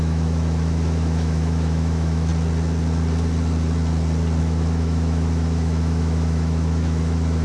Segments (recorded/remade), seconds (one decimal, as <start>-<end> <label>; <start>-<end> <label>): 0.0-2.3 remade; 2.3-4.4 recorded; 4.4-7.4 remade